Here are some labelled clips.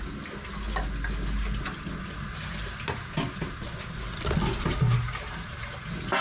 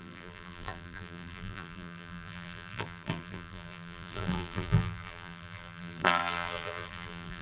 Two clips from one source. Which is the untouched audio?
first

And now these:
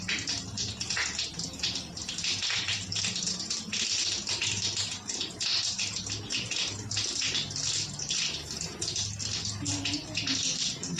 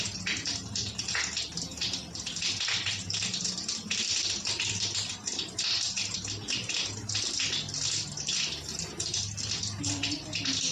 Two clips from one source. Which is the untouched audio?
first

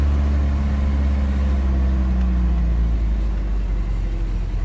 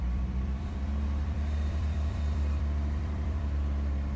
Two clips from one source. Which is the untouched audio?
first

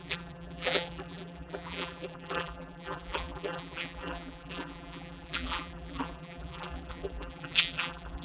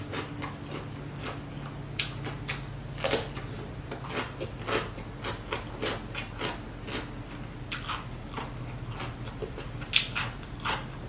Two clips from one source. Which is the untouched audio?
second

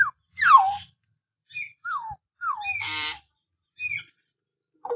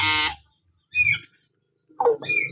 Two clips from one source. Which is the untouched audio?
second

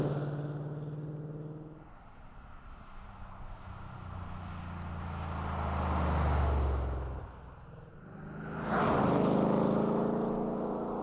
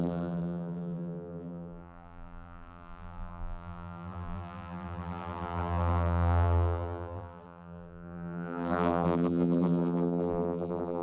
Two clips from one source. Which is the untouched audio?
first